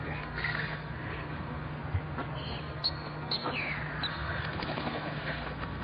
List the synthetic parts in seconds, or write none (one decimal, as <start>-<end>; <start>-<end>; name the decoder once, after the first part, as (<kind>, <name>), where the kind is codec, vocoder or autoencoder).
0.0-1.8 (codec, SNAC); 2.6-3.5; 4.1-5.8